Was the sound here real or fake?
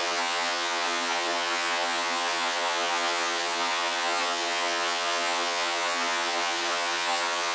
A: fake